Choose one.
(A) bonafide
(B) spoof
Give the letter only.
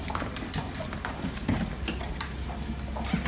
A